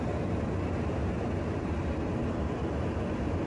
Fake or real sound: real